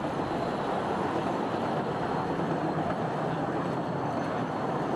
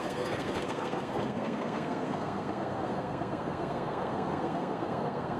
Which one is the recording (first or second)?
first